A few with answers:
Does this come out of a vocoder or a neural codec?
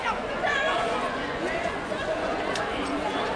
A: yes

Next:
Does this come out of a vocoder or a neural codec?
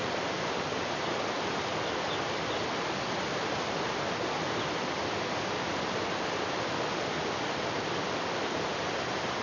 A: no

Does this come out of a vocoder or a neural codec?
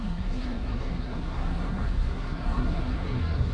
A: yes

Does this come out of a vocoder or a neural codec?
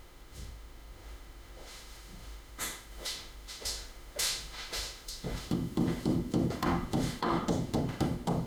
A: yes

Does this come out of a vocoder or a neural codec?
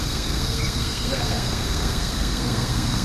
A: yes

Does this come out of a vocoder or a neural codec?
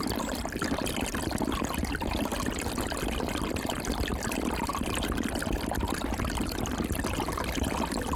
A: no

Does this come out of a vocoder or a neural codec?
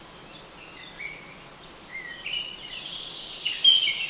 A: no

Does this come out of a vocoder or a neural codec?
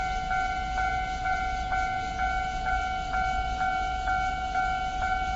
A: no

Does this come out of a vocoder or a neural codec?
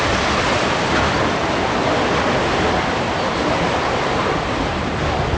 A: no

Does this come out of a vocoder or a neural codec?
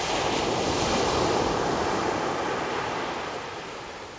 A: no